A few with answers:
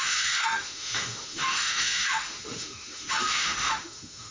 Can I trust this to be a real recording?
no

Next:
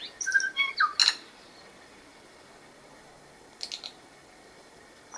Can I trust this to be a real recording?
yes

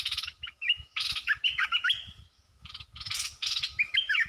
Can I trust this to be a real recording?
no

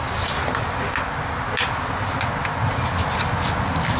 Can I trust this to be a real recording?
yes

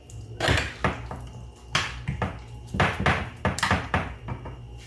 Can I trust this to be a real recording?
yes